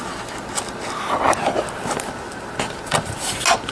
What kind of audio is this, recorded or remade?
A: recorded